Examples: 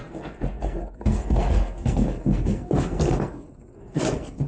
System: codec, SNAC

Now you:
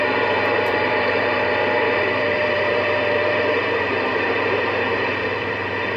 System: vocoder, BigVGAN v2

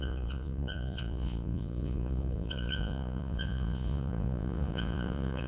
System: vocoder, Vocos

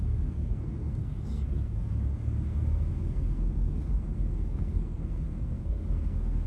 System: codec, SNAC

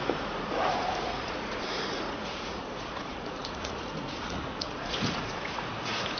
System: vocoder, Vocos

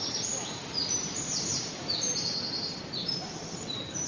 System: vocoder, BigVGAN v2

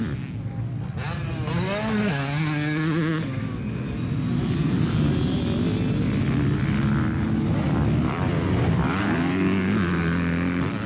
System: none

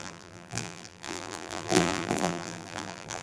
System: vocoder, BigVGAN v2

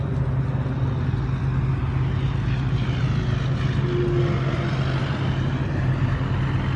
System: none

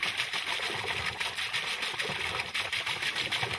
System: none